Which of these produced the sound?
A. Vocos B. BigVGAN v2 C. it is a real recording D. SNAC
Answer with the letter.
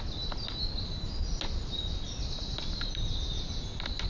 C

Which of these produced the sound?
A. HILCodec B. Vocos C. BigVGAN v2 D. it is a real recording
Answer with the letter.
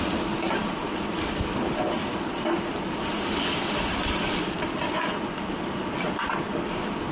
D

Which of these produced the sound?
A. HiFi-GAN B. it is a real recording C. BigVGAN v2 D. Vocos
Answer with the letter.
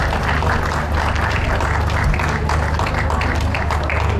B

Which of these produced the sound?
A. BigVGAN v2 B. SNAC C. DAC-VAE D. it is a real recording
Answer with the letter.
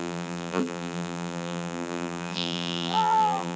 A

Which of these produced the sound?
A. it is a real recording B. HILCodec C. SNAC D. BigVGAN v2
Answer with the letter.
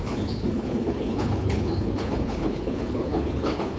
B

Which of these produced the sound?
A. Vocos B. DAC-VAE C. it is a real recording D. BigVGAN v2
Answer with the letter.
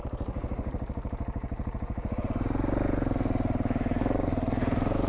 D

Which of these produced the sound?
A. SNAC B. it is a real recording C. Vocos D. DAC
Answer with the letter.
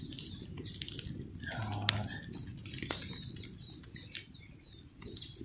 B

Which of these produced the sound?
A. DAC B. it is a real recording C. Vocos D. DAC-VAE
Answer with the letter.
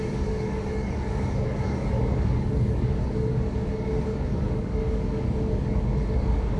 A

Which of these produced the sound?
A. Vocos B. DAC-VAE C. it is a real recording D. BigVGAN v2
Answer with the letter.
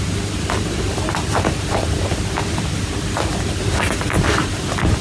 C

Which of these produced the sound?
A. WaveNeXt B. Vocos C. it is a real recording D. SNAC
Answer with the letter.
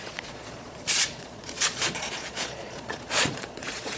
B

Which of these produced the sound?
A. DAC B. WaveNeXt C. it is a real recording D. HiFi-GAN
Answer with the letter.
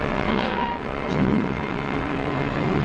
B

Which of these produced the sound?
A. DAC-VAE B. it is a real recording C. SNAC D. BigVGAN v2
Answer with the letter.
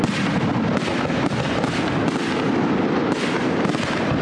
B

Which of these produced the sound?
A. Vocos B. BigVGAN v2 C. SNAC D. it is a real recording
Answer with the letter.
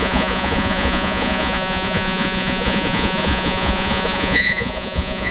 A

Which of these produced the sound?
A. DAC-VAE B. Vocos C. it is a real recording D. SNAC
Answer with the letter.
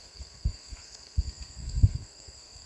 D